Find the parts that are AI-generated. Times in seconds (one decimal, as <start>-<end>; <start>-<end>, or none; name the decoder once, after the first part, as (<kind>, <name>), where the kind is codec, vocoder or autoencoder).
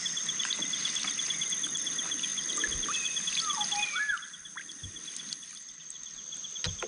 none